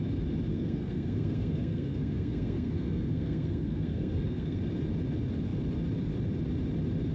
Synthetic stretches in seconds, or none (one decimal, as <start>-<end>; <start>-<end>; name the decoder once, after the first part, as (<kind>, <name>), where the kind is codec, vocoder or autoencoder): 0.5-4.6 (codec, SNAC)